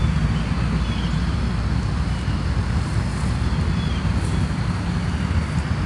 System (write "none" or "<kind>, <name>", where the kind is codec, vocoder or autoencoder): none